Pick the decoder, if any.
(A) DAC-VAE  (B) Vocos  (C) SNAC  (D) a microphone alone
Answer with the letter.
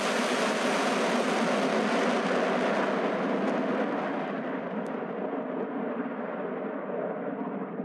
D